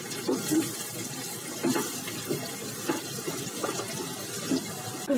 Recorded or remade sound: recorded